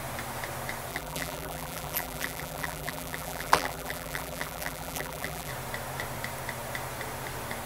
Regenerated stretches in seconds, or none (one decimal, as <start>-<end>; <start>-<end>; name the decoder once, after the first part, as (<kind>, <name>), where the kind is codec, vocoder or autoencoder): 0.9-5.5 (vocoder, BigVGAN v2)